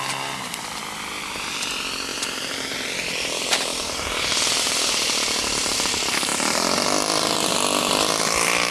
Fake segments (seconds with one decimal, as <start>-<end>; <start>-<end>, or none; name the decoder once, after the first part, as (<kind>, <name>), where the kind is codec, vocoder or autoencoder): 2.1-3.3 (vocoder, BigVGAN v2); 3.7-4.9; 6.3-8.7